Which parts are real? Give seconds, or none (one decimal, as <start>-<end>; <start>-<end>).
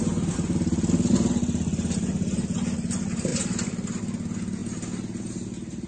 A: 0.0-5.9